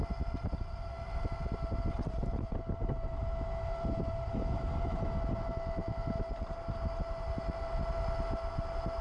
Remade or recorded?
recorded